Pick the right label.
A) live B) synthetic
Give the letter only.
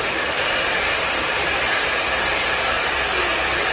A